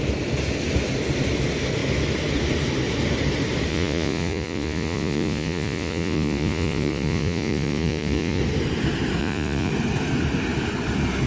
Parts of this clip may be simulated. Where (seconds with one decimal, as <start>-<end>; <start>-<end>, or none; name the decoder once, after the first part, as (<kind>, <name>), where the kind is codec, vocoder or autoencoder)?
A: 3.7-8.4 (vocoder, Vocos); 9.2-9.7